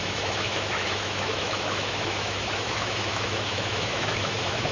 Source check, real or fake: fake